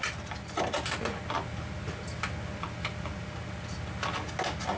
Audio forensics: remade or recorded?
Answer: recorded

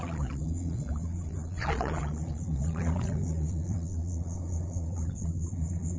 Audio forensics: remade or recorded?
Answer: remade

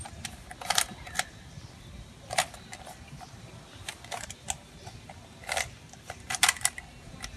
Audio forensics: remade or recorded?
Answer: recorded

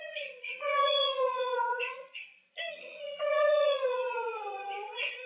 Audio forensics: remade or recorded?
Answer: remade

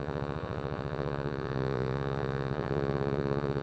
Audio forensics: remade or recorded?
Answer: remade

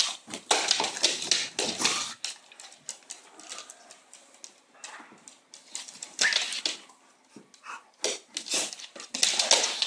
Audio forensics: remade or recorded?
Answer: recorded